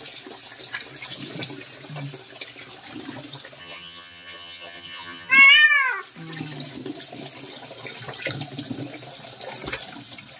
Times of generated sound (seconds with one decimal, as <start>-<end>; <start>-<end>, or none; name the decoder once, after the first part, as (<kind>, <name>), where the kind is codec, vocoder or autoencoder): 3.6-5.3 (vocoder, HiFi-GAN)